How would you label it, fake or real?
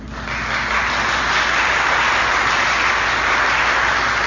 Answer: real